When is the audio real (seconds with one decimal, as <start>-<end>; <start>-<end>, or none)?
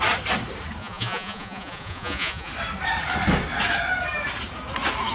0.0-0.8; 2.5-5.1